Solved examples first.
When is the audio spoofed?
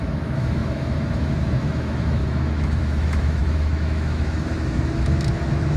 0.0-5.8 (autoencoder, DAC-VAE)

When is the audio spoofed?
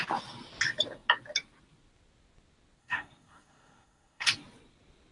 2.8-4.3 (codec, SNAC)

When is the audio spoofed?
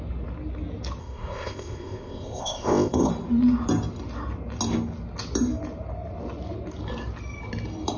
1.0-3.1 (codec, ZipCodec)